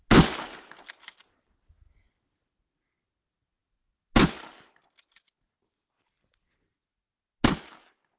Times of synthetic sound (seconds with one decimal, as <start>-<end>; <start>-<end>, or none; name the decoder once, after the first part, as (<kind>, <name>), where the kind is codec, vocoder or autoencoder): none